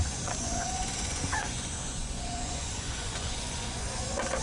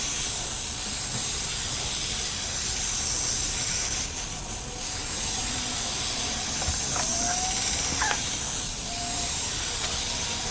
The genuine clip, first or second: second